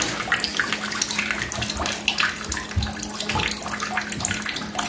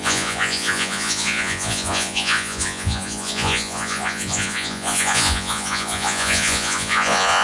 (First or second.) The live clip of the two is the first